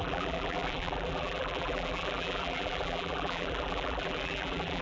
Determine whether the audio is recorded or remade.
remade